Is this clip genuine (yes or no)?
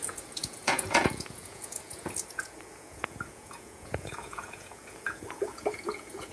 no